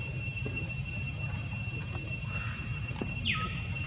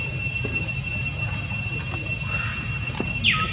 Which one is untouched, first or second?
second